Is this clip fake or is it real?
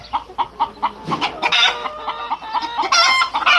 real